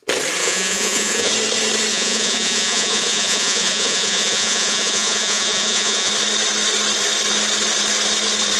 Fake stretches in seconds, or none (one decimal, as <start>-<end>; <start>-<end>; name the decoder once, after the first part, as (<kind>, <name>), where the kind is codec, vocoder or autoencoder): 0.4-1.3 (vocoder, Vocos); 1.9-6.1